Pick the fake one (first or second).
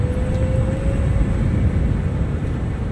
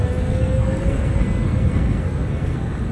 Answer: second